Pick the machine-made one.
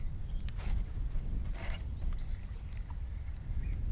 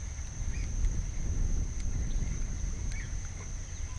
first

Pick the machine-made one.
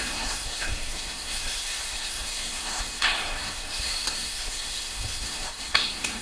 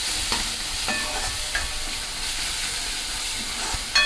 first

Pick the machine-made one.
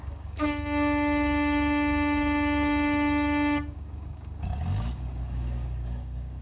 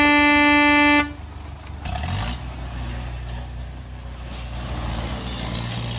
first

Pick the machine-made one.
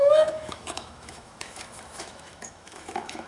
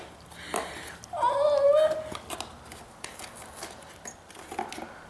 first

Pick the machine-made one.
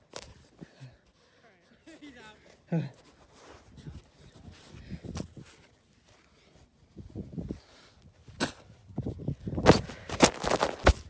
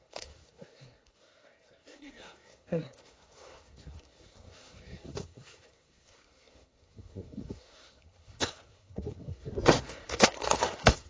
second